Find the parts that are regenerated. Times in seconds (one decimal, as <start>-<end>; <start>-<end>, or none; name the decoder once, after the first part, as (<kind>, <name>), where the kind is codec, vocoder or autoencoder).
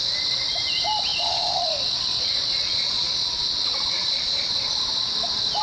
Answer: 1.1-4.5 (vocoder, Vocos)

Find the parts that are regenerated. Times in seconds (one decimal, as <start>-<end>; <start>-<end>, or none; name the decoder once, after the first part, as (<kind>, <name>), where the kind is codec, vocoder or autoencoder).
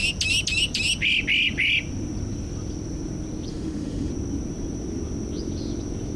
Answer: 3.5-4.1 (autoencoder, DAC-VAE)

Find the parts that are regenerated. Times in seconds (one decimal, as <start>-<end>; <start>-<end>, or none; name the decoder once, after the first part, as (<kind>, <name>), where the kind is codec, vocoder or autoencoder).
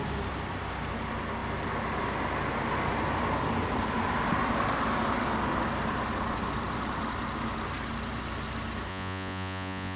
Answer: 8.9-10.0 (vocoder, Vocos)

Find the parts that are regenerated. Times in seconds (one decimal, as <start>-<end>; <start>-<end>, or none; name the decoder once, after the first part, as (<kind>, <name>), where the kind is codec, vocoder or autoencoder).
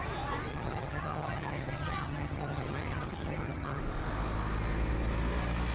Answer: 0.5-3.8 (vocoder, HiFi-GAN)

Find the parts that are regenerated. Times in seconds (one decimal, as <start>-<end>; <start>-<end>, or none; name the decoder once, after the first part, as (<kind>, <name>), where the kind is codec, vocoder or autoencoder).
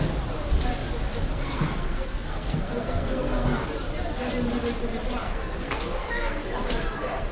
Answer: 1.3-3.7 (codec, SNAC); 5.2-7.3